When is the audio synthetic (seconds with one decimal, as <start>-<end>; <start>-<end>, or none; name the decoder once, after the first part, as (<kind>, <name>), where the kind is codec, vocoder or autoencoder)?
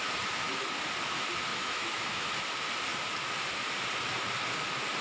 1.5-2.3 (autoencoder, DAC-VAE)